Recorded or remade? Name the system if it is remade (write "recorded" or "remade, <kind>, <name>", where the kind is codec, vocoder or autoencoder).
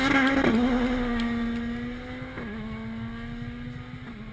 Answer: recorded